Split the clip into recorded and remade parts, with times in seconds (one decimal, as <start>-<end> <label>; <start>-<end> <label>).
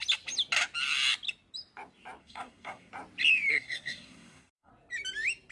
0.0-2.2 recorded; 2.2-2.9 remade; 2.9-3.5 recorded; 3.5-4.7 remade; 4.7-5.5 recorded